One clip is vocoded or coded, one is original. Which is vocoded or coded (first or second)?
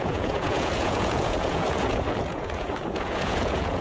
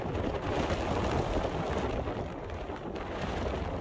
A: first